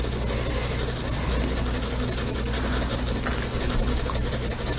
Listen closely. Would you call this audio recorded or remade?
recorded